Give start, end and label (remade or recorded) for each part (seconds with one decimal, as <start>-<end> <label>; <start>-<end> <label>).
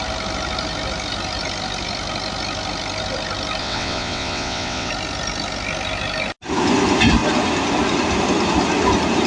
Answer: 0.0-3.6 recorded; 3.6-4.9 remade; 4.9-9.3 recorded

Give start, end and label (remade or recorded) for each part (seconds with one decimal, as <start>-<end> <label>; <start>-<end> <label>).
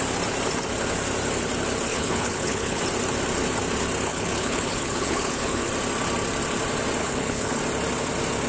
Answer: 0.0-1.9 recorded; 1.9-2.8 remade; 2.8-4.1 recorded; 4.1-5.7 remade; 5.7-7.0 recorded; 7.0-7.6 remade; 7.6-8.5 recorded